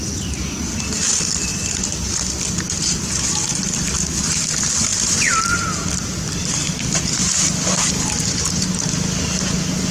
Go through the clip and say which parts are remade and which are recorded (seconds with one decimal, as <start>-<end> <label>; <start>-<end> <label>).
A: 0.0-4.9 recorded; 4.9-8.6 remade; 8.6-9.9 recorded